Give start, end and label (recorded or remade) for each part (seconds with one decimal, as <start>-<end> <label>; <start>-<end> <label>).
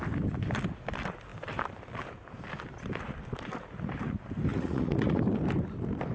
0.0-4.5 recorded; 4.5-5.2 remade; 5.2-6.1 recorded